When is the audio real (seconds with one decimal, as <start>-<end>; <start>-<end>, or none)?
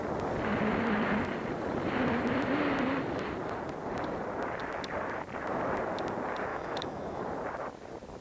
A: 0.0-6.5; 7.2-8.2